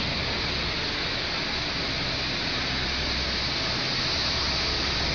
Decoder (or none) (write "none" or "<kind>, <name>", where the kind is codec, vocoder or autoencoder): none